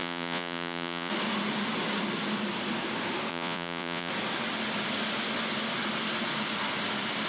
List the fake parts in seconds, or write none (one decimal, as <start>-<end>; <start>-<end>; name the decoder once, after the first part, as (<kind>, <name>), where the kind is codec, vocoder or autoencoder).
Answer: 0.0-1.1 (vocoder, Vocos); 3.3-4.1